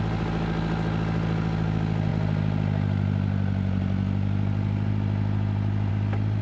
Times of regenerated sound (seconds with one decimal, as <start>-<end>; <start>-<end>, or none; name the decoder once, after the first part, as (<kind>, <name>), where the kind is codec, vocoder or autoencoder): none